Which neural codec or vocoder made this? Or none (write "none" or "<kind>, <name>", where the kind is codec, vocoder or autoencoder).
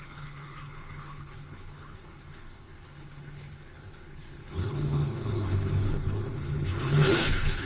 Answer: codec, HILCodec